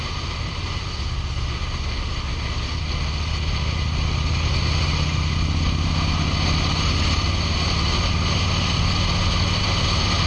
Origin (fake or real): real